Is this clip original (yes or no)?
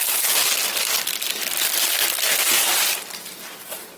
yes